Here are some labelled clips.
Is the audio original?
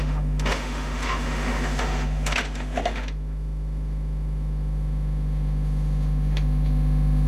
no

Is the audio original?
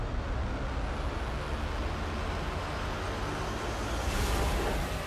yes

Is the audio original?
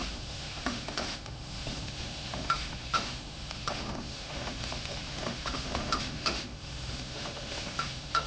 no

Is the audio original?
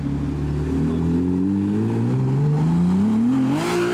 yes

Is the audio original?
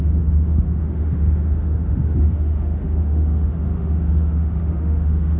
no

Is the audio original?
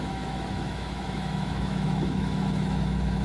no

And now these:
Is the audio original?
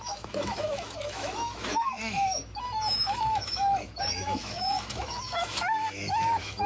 no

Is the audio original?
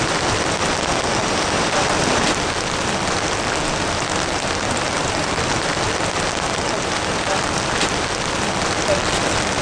yes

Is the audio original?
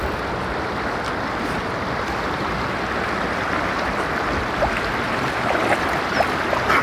yes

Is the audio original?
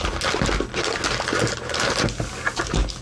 yes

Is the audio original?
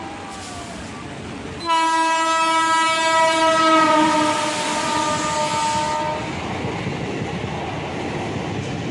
yes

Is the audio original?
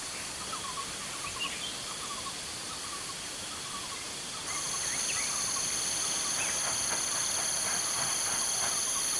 yes